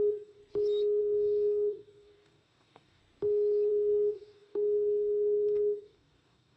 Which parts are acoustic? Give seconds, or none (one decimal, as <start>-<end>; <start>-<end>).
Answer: 0.4-1.0; 3.0-3.7